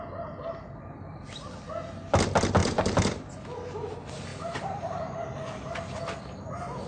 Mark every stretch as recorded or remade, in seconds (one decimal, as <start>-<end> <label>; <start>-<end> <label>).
0.0-2.6 recorded; 2.6-3.3 remade; 3.3-4.3 recorded; 4.3-5.3 remade; 5.3-6.9 recorded